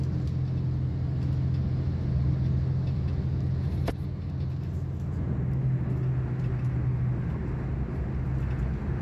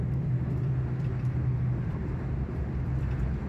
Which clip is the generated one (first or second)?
second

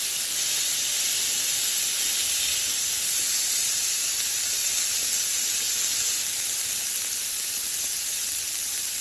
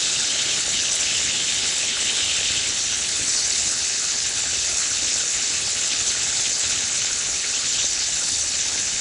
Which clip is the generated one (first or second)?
second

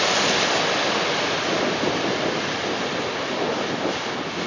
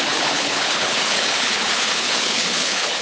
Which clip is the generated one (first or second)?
second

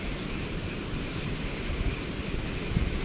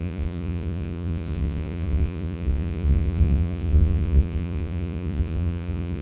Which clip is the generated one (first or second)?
second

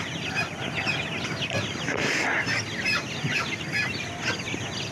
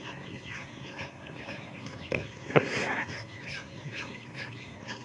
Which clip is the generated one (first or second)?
second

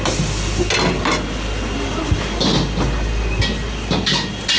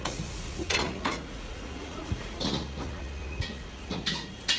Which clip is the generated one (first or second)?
second